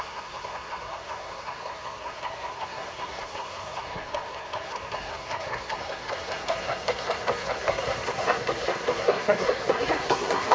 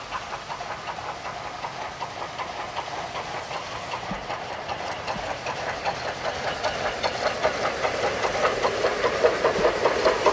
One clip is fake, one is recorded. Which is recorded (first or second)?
second